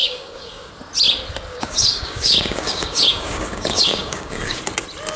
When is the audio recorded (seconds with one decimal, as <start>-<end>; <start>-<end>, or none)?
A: 0.7-1.5; 4.6-5.2